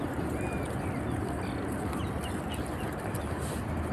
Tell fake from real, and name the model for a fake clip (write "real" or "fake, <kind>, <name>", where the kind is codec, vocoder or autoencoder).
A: real